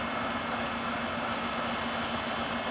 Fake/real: real